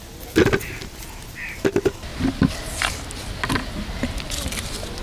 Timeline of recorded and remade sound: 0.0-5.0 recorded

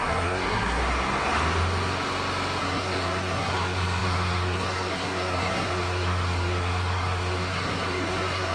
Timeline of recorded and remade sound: 0.0-0.8 remade; 0.8-2.6 recorded; 2.6-8.5 remade